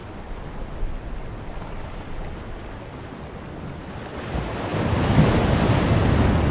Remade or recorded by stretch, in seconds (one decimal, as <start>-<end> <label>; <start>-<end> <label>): 0.0-6.5 recorded